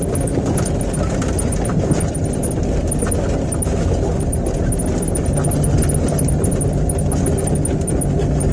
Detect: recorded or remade recorded